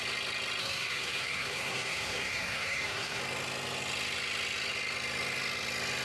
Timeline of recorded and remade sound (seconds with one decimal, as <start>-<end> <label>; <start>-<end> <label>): 0.0-0.6 recorded; 0.6-3.2 remade; 3.2-6.0 recorded